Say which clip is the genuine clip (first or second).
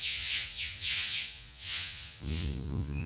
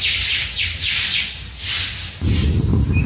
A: second